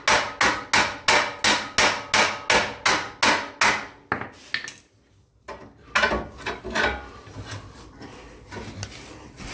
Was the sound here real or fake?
real